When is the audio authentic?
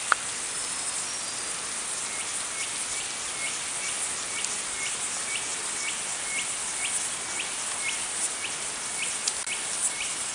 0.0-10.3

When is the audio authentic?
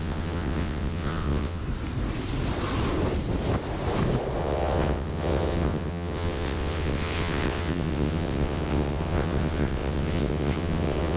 1.6-4.4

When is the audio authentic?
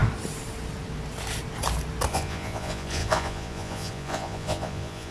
0.0-2.1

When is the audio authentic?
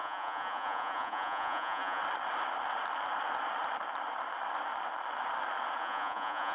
2.0-5.8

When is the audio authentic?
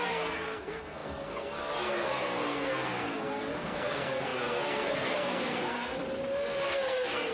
6.0-6.7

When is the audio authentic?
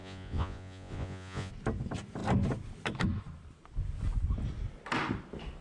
1.5-5.6